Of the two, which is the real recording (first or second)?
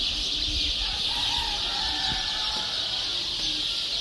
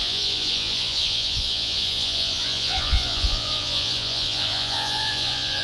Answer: first